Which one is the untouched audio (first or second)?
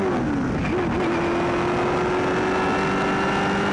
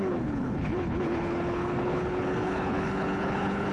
first